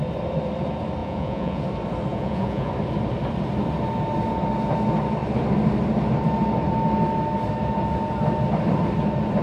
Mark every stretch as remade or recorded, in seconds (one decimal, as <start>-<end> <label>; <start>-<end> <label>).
0.0-1.0 recorded; 1.0-1.6 remade; 1.6-2.1 recorded; 2.1-2.7 remade; 2.7-9.4 recorded